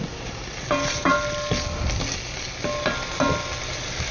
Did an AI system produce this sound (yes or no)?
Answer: no